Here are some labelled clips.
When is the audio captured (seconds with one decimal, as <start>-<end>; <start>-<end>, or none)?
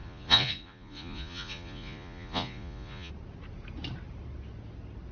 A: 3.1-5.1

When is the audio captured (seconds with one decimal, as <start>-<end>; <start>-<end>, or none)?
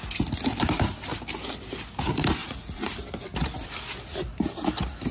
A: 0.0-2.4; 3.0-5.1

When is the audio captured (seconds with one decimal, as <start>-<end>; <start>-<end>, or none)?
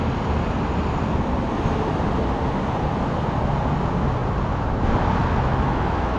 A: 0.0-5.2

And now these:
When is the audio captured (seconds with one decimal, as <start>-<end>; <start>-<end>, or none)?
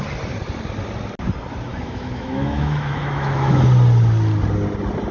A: 0.0-1.7; 3.6-5.1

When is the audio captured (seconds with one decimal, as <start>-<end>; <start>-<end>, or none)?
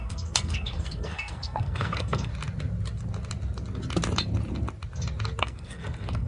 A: 2.3-5.4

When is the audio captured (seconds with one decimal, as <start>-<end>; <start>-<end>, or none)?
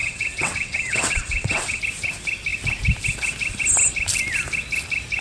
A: 1.8-5.2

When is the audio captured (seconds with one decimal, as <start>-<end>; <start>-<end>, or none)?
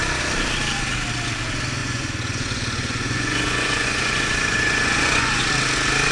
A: 0.0-1.8; 5.5-6.1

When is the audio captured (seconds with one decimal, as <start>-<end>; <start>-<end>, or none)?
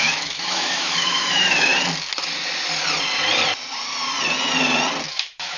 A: 1.7-5.1